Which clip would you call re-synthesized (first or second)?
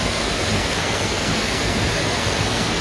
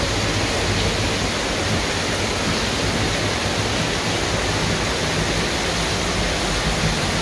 first